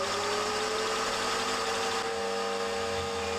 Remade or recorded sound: recorded